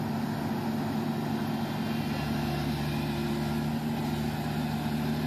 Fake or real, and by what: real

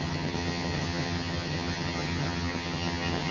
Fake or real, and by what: fake, vocoder, HiFi-GAN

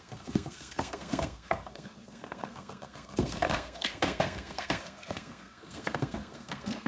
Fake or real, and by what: fake, codec, SNAC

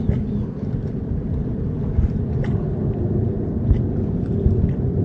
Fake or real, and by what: real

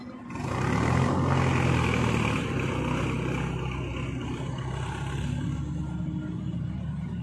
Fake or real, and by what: real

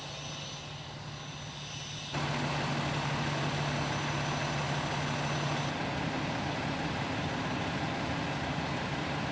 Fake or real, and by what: real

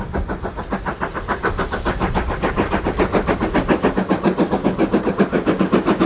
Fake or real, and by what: real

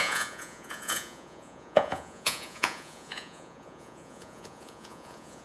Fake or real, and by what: fake, vocoder, Vocos